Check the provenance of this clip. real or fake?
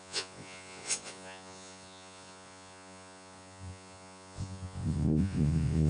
fake